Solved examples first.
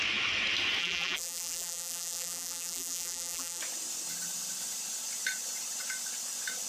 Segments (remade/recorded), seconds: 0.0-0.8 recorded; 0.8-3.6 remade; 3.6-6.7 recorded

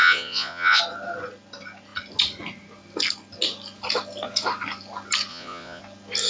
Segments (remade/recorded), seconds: 0.0-0.8 remade; 0.8-5.3 recorded; 5.3-5.8 remade; 5.8-6.3 recorded

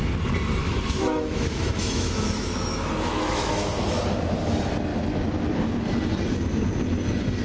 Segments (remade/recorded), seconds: 0.0-0.6 recorded; 0.6-4.0 remade; 4.0-7.4 recorded